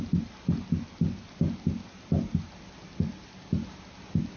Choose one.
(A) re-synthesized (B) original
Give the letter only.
B